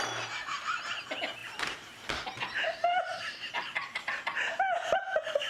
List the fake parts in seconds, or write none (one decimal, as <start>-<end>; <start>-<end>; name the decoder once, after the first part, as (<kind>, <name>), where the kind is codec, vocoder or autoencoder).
1.4-4.0 (vocoder, BigVGAN v2)